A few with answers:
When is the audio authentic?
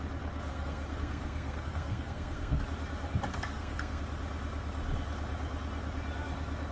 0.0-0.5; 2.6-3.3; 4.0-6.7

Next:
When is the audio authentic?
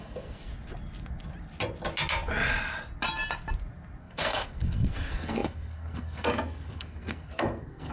0.5-4.0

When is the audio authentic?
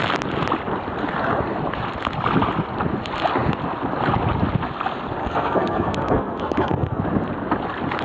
0.0-5.2; 7.0-8.0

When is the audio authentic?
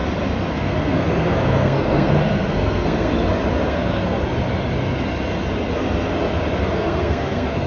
0.0-0.5; 3.1-3.7; 4.2-6.6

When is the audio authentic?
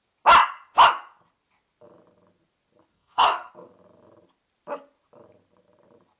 0.0-2.9; 3.5-6.2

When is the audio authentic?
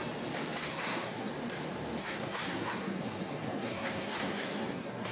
0.0-0.7; 1.3-2.0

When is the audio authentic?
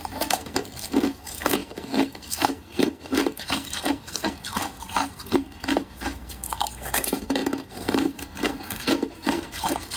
none